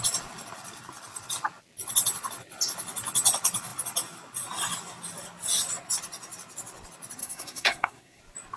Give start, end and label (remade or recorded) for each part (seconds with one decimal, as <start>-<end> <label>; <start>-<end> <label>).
0.0-7.2 recorded; 7.2-8.2 remade; 8.2-8.6 recorded